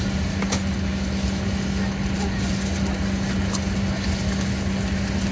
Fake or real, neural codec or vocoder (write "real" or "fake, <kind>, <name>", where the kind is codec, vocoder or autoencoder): real